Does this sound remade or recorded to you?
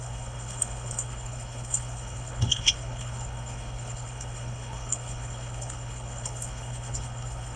remade